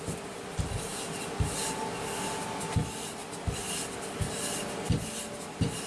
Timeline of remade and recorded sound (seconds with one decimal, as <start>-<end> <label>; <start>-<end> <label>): 0.0-5.9 recorded